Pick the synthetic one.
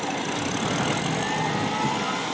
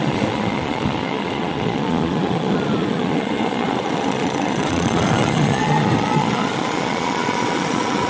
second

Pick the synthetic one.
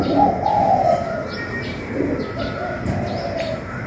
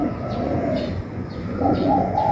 second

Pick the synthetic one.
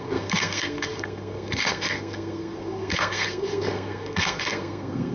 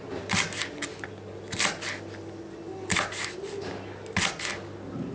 first